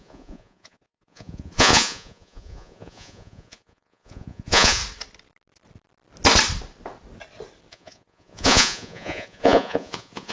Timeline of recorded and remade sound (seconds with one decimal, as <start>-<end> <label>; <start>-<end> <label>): 0.0-4.8 remade; 4.8-7.7 recorded; 7.7-10.3 remade